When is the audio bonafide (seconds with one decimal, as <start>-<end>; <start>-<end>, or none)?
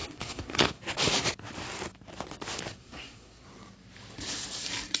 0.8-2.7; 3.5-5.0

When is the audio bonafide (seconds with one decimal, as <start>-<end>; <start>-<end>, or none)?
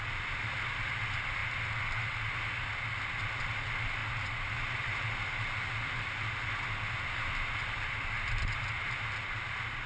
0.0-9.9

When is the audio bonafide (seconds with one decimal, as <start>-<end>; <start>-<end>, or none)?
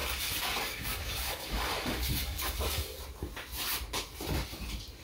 3.0-5.0